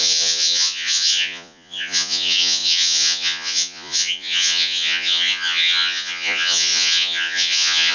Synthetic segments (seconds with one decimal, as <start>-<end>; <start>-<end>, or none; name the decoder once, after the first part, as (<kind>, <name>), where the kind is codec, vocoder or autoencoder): 0.0-7.9 (vocoder, Vocos)